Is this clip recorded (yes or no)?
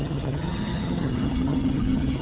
no